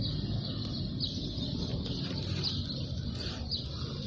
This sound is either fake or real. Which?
real